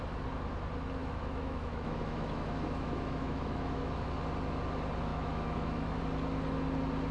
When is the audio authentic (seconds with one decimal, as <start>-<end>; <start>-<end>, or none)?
0.0-1.0; 4.1-5.1; 6.0-7.1